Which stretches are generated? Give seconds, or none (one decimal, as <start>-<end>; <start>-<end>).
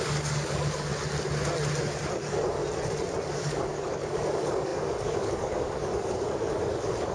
0.0-0.9; 2.1-2.6; 3.3-7.1